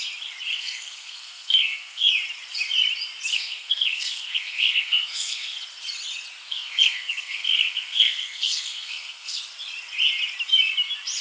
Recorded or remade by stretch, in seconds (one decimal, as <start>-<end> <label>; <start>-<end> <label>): 0.0-0.5 recorded; 0.5-2.1 remade; 2.1-3.3 recorded; 3.3-5.6 remade; 5.6-6.5 recorded; 6.5-9.4 remade; 9.4-11.2 recorded